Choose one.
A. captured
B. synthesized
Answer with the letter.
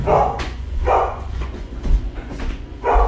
B